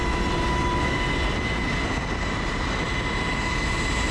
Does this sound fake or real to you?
real